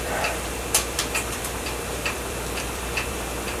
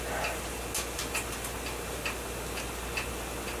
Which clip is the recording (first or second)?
second